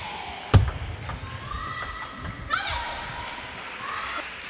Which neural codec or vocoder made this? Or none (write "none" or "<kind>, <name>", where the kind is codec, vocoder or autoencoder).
none